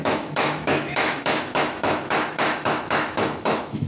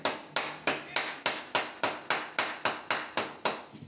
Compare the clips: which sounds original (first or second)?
second